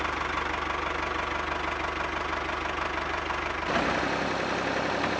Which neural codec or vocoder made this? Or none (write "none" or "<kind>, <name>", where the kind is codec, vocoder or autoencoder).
none